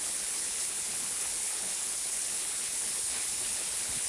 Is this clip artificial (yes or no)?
yes